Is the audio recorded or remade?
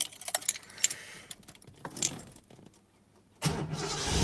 recorded